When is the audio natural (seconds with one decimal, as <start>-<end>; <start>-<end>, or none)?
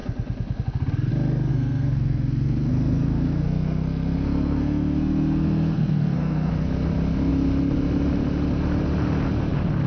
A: 0.0-1.5; 6.5-9.9